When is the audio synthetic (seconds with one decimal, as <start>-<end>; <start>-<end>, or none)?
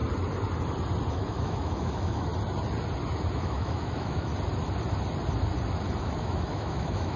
1.1-2.3; 3.3-4.3; 6.0-7.2